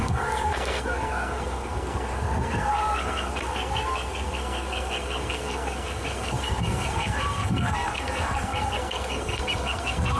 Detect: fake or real fake